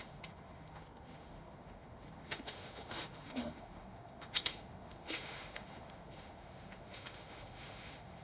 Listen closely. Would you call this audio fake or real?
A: fake